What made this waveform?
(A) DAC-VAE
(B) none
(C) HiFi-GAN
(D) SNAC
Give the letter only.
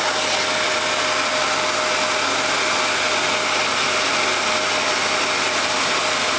B